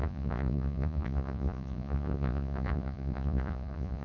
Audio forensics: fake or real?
fake